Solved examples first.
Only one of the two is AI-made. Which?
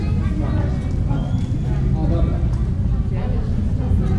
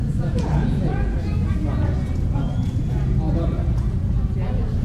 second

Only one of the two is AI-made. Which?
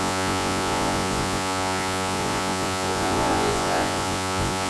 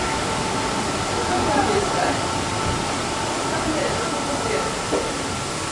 first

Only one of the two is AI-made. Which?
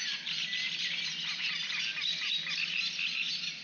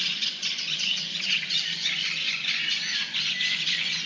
second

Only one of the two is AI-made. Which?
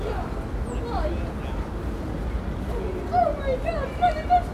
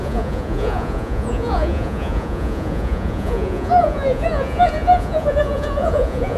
second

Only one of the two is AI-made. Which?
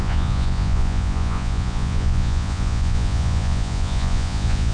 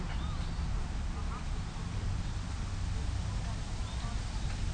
first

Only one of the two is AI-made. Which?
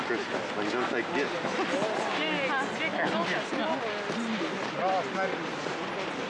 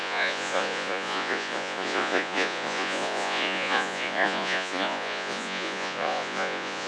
second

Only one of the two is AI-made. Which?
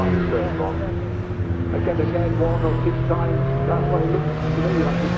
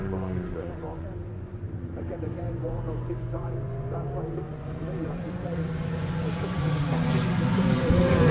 second